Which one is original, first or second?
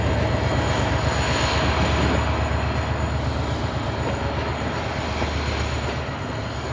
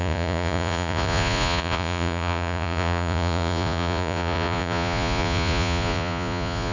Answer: first